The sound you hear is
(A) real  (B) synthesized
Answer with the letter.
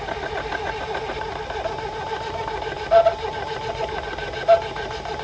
A